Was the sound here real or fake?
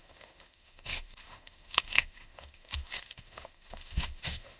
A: fake